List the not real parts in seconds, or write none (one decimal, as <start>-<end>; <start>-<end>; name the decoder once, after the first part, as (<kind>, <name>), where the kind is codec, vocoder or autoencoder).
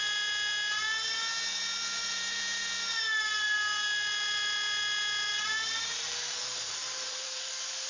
2.0-2.6 (vocoder, BigVGAN v2); 5.3-7.5